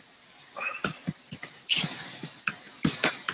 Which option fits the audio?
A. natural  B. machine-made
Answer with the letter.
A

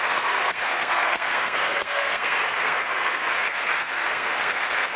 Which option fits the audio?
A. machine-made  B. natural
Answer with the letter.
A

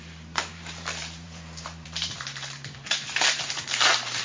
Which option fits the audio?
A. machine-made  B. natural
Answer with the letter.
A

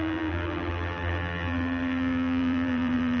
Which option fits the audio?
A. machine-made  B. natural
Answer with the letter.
A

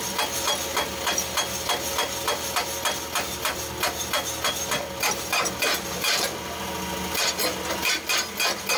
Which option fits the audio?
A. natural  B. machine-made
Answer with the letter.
A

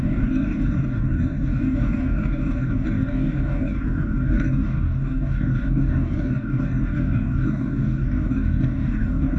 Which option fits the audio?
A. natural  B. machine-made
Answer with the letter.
B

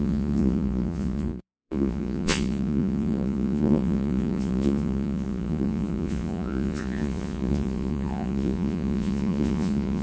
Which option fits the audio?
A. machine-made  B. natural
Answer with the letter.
A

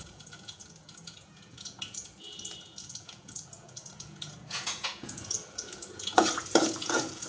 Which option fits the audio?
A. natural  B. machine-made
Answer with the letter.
B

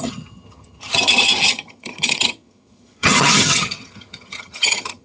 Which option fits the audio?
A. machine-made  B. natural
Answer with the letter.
A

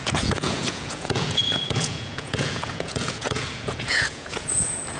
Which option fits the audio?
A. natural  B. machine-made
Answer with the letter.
B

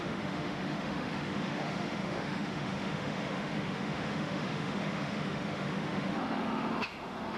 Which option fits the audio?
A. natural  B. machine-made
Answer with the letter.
B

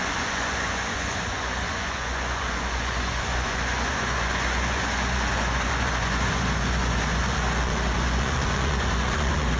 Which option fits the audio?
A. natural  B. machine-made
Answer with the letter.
B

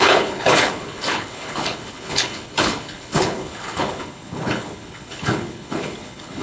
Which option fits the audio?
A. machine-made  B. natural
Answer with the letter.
A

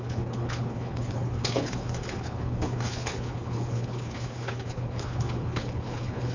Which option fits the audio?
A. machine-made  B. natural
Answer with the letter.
A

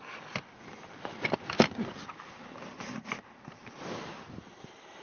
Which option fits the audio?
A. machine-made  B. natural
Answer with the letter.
A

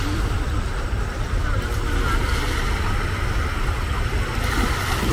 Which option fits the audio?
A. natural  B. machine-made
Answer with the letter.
A